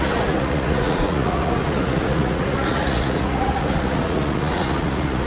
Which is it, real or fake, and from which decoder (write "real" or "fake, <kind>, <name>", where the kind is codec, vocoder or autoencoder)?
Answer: fake, vocoder, Vocos